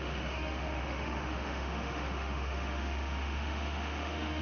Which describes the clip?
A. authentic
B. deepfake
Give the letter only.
B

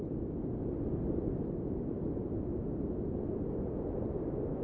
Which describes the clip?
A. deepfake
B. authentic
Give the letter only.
B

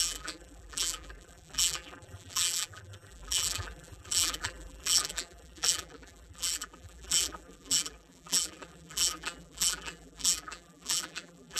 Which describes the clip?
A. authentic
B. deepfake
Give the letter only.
B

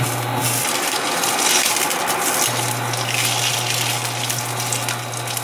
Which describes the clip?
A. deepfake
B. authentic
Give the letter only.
B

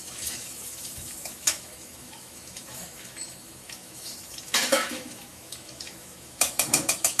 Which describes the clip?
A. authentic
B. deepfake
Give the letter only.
B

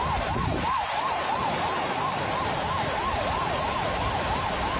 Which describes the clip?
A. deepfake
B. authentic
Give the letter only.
B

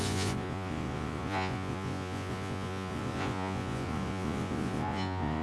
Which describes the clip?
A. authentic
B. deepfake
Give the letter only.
B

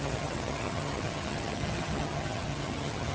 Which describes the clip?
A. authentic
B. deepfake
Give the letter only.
B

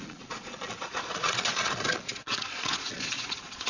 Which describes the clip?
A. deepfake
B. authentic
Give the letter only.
A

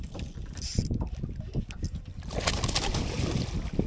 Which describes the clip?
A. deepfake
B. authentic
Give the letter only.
B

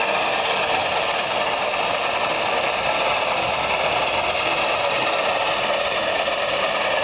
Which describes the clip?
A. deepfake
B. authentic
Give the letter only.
A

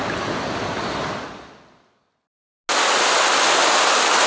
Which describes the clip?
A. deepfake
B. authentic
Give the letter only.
B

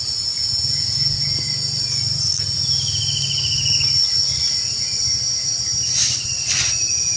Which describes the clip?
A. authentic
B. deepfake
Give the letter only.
A